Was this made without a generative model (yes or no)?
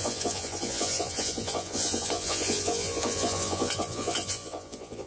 no